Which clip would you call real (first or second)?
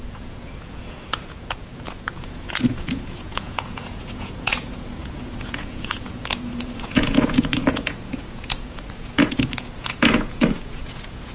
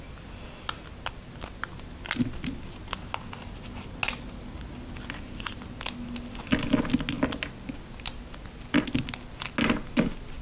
second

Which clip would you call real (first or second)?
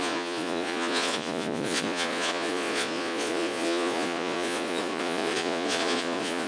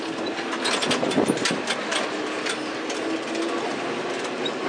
second